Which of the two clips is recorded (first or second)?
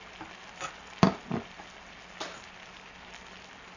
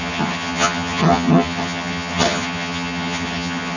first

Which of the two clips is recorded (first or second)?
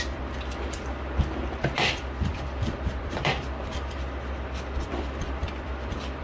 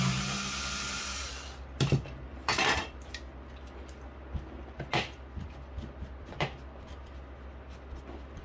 second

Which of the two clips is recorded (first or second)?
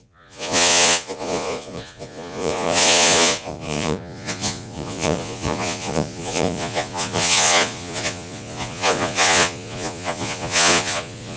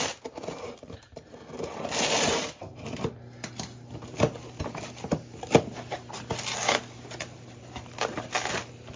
second